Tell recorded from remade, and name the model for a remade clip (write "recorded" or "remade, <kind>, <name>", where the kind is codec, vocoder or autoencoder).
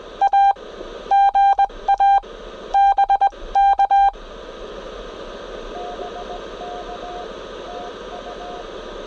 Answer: recorded